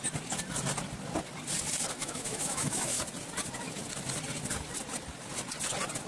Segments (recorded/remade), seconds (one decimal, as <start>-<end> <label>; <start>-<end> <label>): 0.0-2.0 recorded; 2.0-3.0 remade; 3.0-6.1 recorded